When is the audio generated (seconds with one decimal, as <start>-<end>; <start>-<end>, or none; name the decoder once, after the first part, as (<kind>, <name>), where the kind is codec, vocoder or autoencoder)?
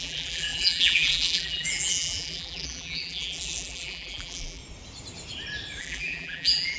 0.0-4.6 (vocoder, BigVGAN v2); 5.8-6.8